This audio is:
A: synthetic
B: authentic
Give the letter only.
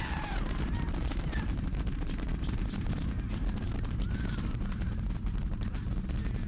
A